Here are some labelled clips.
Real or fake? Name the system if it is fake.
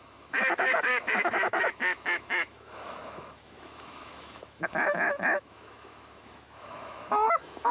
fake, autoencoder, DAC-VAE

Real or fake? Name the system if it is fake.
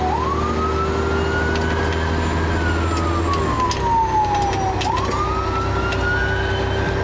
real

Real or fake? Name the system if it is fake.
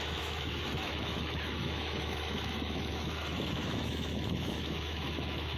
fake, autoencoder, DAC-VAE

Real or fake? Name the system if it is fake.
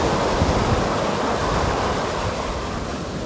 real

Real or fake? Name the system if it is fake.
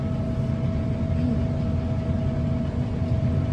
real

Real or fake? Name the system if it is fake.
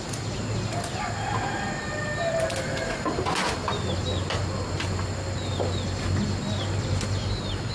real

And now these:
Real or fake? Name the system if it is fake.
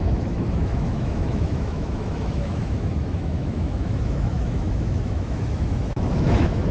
fake, autoencoder, DAC-VAE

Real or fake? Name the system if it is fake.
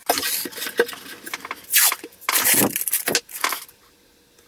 real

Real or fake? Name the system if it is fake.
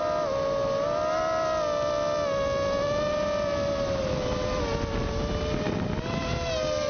real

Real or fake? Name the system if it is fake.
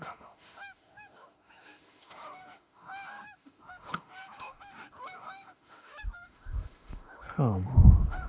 fake, autoencoder, DAC-VAE